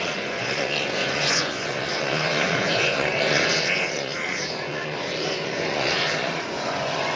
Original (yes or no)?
no